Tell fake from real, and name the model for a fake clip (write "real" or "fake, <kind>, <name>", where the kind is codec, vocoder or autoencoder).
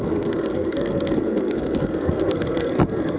fake, codec, SNAC